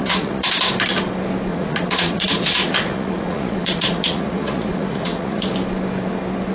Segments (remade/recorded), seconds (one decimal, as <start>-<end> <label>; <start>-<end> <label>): 0.0-0.5 remade; 0.5-1.5 recorded; 1.5-5.4 remade; 5.4-6.5 recorded